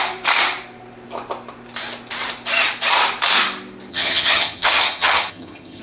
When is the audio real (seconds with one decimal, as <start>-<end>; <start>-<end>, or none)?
0.0-3.9